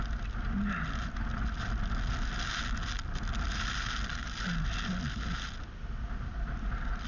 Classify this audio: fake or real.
real